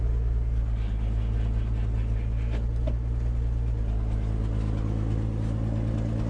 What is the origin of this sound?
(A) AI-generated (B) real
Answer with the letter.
B